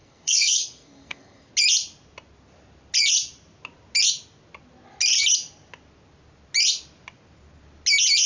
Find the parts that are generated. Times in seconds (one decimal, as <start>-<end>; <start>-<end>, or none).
0.0-1.5